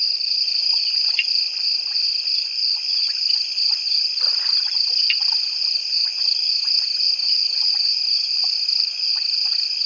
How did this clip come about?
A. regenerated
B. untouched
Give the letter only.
B